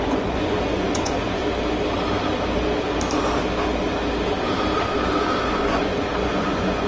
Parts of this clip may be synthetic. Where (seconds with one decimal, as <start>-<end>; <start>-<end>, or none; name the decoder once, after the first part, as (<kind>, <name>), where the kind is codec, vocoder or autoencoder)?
0.0-1.4 (vocoder, Vocos); 5.5-6.9